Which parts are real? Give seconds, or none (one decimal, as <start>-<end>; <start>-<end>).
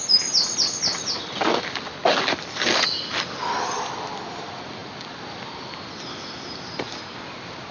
0.0-7.7